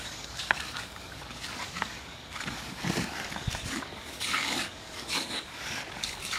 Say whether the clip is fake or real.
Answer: fake